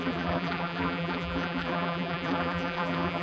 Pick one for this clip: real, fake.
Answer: fake